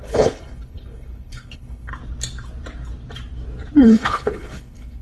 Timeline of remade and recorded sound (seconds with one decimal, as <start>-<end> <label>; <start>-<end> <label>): 0.0-1.9 remade; 1.9-3.8 recorded; 3.8-5.0 remade